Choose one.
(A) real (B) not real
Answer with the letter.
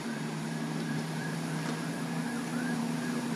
B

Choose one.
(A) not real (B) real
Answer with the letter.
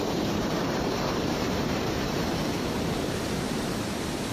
A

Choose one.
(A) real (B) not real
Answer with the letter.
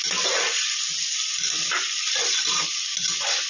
A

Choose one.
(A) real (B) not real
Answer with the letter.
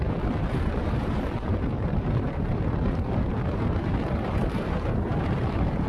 B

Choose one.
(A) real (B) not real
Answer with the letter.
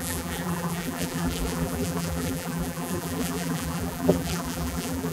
B